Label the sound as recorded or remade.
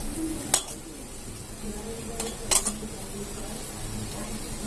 recorded